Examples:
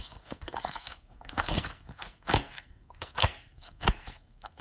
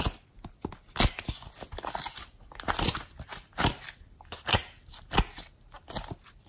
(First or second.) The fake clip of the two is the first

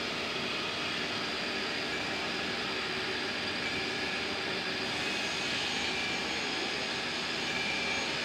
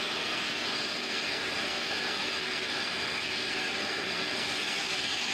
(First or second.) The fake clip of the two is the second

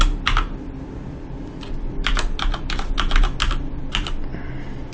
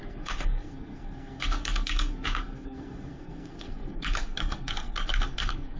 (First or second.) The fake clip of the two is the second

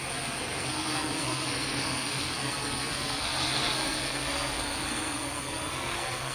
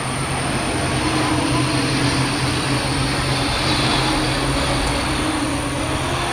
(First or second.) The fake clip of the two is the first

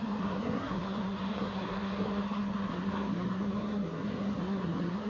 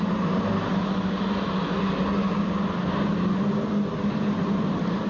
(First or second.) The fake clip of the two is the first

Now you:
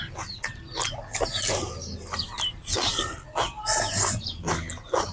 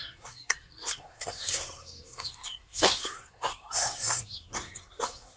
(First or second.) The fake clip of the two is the second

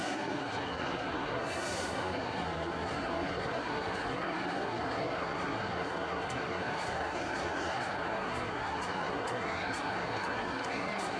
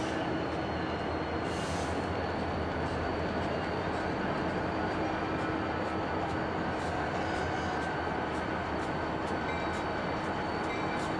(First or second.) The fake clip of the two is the first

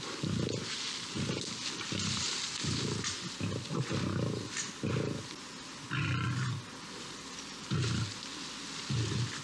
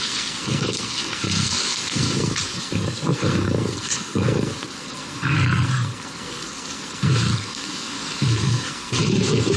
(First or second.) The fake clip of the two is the second